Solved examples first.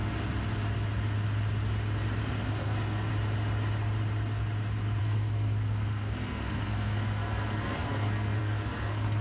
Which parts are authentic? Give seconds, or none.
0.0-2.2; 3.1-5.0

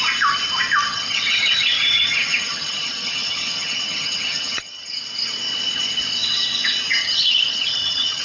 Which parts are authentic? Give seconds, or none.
0.0-0.9; 4.9-7.0

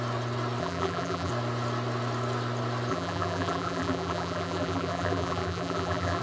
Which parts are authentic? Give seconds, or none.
0.0-0.6; 1.3-2.9

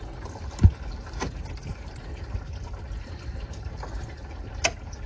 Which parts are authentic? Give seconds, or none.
0.0-5.1